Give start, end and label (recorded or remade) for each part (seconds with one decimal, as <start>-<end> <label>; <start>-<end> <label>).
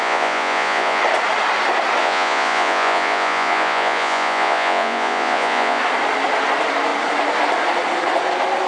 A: 0.0-1.0 remade; 1.0-2.0 recorded; 2.0-5.8 remade; 5.8-8.7 recorded